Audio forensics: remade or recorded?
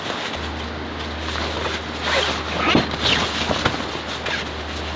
recorded